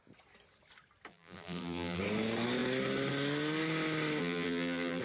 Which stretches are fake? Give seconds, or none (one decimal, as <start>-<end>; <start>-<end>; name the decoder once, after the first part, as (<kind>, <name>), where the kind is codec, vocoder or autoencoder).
1.1-2.0 (vocoder, BigVGAN v2); 4.2-5.0